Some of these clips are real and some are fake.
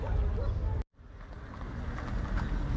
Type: real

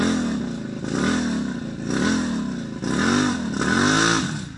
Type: real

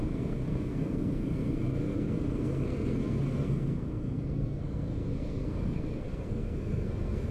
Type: fake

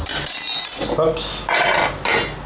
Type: real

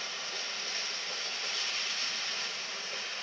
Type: real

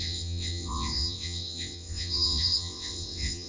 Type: fake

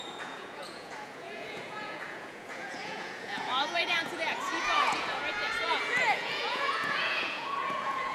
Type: fake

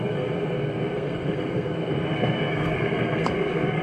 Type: fake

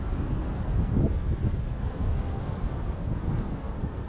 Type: fake